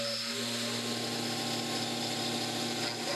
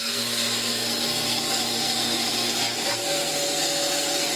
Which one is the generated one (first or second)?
second